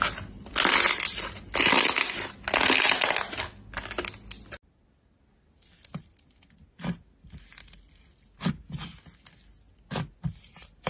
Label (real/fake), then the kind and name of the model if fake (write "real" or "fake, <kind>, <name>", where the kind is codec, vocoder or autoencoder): real